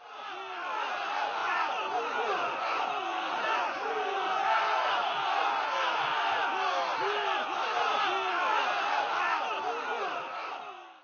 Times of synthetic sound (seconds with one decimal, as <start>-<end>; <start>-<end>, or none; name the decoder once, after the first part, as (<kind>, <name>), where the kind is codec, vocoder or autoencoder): 1.4-5.3 (vocoder, Vocos)